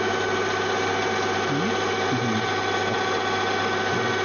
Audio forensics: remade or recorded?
recorded